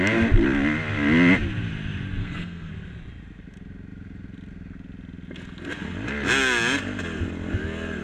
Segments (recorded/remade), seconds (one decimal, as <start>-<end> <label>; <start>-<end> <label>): 0.0-2.2 recorded; 2.2-2.7 remade; 2.7-8.0 recorded